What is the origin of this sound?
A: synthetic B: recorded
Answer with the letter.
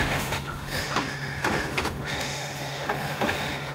A